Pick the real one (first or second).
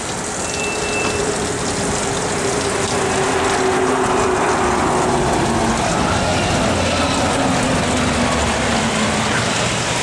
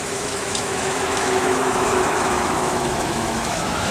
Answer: first